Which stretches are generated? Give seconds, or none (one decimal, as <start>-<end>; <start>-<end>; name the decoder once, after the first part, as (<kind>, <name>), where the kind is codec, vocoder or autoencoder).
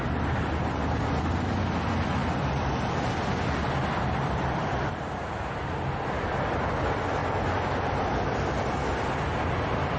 0.0-7.2 (vocoder, BigVGAN v2); 8.0-10.0